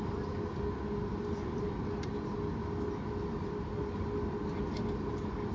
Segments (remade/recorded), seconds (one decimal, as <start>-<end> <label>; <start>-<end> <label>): 0.0-5.5 recorded